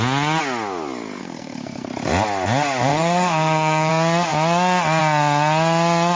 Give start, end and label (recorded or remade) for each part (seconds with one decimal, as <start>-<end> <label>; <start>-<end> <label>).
0.0-1.2 recorded; 1.2-1.9 remade; 1.9-2.9 recorded; 2.9-3.9 remade; 3.9-6.1 recorded